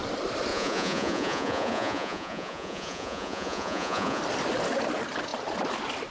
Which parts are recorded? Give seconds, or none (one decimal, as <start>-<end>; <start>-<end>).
0.0-0.5; 4.2-6.1